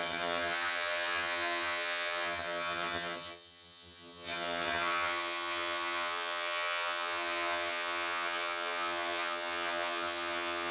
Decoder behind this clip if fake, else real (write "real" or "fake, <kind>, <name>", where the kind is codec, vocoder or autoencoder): fake, vocoder, HiFi-GAN